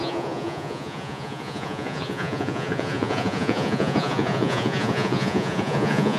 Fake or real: fake